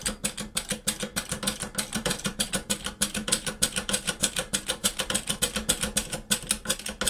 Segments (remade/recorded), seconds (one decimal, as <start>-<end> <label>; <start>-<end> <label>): 0.0-1.9 recorded; 1.9-5.4 remade; 5.4-7.1 recorded